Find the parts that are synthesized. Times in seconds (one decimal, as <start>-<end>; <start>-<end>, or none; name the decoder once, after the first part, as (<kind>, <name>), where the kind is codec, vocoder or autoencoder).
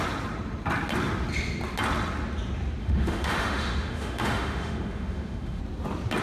2.8-5.6 (autoencoder, DAC-VAE)